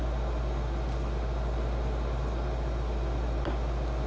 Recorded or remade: recorded